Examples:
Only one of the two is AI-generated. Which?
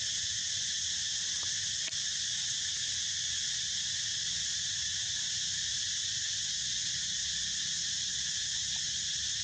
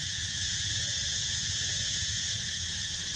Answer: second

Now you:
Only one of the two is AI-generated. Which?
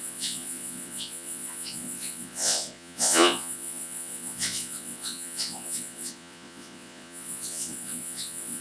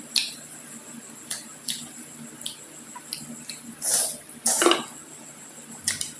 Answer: first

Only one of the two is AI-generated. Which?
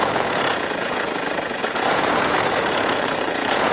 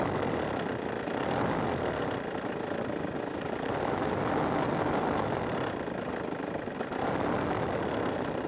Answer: first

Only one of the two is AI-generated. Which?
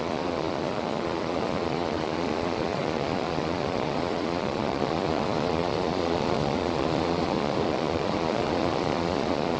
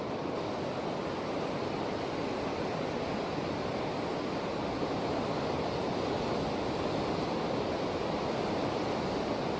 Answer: first